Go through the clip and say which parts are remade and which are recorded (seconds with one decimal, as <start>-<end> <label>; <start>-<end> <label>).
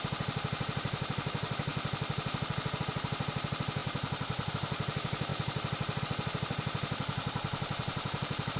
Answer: 0.0-1.7 remade; 1.7-2.8 recorded; 2.8-8.6 remade